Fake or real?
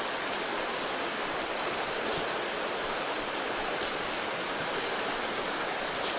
real